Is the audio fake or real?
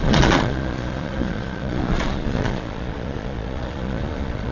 fake